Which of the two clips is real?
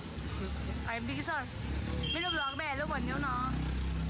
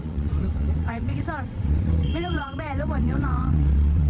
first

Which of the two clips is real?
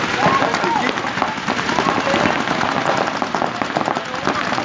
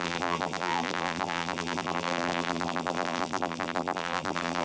first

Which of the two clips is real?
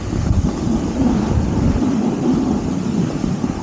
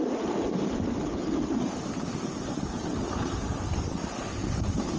first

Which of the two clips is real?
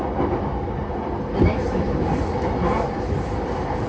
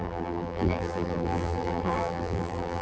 first